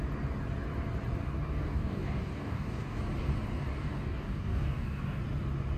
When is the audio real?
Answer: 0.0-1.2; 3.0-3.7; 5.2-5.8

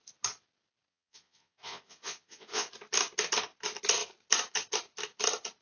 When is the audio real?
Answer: 0.0-0.9; 2.7-5.6

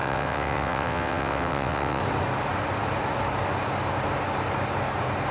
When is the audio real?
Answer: 2.0-5.3